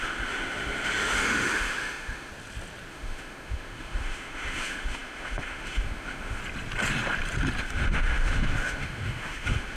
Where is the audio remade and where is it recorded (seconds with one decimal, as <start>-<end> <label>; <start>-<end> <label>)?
0.0-2.3 remade; 2.3-2.9 recorded; 2.9-6.4 remade; 6.4-7.6 recorded; 7.6-9.8 remade